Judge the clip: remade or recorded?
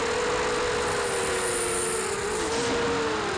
recorded